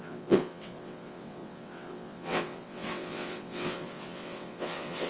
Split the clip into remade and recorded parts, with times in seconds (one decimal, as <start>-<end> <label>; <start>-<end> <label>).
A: 0.0-5.1 remade